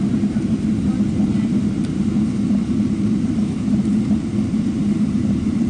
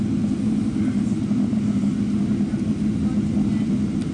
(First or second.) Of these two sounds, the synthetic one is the first